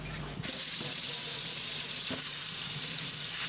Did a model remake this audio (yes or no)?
no